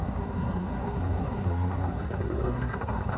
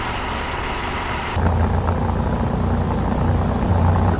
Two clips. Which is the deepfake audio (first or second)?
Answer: first